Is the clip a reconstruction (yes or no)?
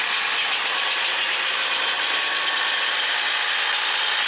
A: no